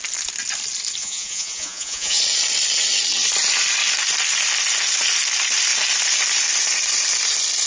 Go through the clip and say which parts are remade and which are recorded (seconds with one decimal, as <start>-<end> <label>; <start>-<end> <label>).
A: 0.0-1.0 recorded; 1.0-2.2 remade; 2.2-7.7 recorded